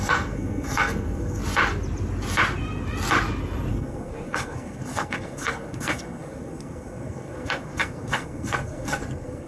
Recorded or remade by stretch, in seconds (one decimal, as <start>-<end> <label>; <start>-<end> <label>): 0.0-1.4 remade; 1.4-3.7 recorded; 3.7-9.5 remade